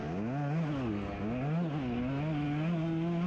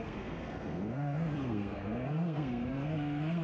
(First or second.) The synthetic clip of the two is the second